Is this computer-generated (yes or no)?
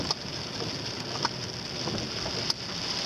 no